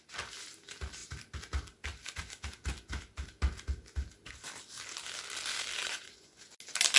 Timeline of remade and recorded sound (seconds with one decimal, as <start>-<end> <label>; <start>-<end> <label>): 0.0-5.8 recorded; 5.8-6.5 remade; 6.5-7.0 recorded